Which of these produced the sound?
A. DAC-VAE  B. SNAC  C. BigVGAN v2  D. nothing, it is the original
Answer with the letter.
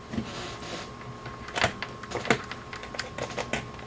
D